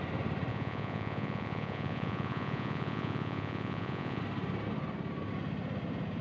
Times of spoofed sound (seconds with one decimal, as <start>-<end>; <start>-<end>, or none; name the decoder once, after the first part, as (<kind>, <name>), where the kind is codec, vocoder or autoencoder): 0.5-4.2 (vocoder, Vocos)